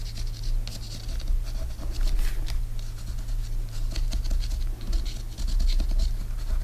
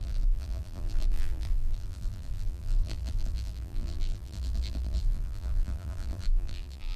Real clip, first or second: first